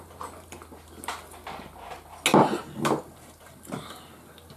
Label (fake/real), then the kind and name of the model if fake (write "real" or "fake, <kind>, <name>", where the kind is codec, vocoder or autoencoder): real